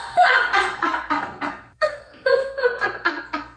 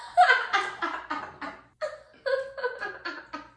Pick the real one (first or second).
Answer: second